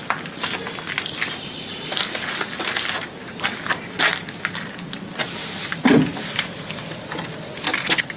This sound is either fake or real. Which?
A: real